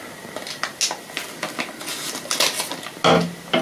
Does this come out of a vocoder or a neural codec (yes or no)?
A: no